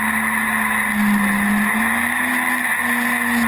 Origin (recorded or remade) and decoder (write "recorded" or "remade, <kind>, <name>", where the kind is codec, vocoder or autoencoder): recorded